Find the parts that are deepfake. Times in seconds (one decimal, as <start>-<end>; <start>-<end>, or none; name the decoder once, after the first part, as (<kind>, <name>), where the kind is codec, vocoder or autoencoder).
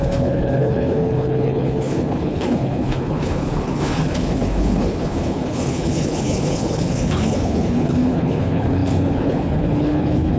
0.0-10.4 (codec, HILCodec)